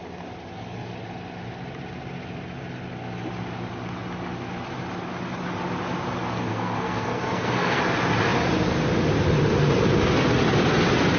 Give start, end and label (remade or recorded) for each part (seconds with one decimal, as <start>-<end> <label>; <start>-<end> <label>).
0.0-6.5 recorded; 6.5-7.8 remade; 7.8-11.2 recorded